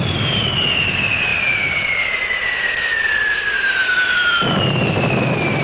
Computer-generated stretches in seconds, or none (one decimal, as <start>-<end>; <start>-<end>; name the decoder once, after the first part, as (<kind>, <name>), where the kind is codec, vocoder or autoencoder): none

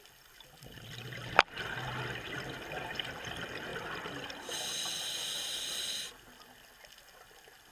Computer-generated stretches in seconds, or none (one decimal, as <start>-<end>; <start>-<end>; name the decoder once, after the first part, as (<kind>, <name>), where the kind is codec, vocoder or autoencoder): none

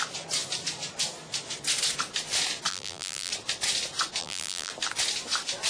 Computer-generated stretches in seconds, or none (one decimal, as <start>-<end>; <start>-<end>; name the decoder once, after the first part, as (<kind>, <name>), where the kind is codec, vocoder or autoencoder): 2.7-3.3 (vocoder, BigVGAN v2); 4.2-4.7

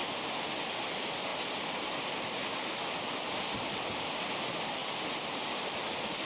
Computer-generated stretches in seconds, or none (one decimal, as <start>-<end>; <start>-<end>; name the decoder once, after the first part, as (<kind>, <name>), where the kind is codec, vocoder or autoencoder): 0.0-0.5 (vocoder, BigVGAN v2); 4.8-5.7